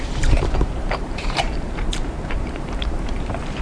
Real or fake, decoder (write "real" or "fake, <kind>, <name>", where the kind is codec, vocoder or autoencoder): fake, vocoder, BigVGAN v2